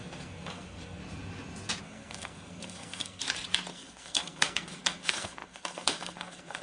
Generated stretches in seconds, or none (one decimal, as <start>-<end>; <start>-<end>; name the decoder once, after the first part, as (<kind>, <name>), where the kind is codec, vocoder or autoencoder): 0.0-1.0 (codec, SNAC); 1.8-3.2; 3.7-6.6